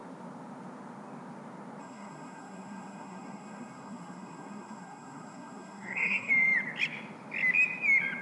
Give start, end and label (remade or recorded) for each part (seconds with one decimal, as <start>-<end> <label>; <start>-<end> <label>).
0.0-1.8 recorded; 1.8-6.3 remade; 6.3-8.2 recorded